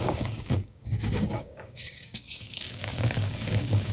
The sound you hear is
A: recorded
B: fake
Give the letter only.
B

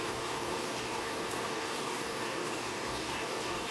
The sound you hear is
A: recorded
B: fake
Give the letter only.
B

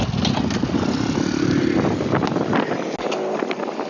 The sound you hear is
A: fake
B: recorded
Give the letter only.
B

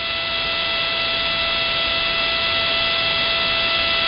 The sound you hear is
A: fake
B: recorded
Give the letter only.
B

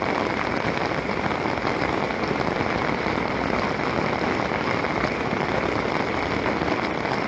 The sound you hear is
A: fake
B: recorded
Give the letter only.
B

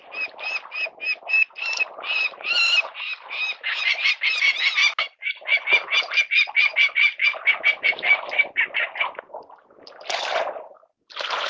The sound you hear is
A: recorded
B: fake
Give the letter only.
A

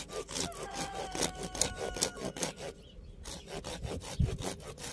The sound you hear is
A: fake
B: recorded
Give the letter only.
B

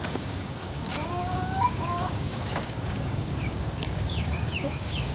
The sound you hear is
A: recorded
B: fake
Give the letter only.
B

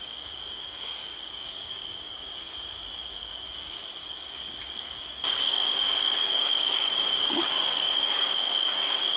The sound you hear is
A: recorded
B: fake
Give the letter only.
B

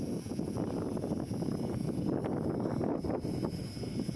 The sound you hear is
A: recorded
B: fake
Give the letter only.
A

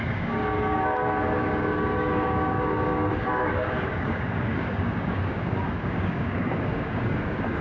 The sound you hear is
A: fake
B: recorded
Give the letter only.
A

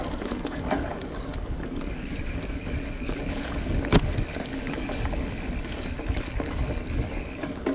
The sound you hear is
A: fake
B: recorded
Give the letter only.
A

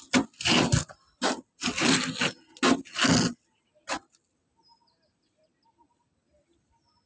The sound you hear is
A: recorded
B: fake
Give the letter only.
A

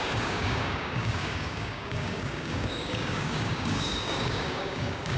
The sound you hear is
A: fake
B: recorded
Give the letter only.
A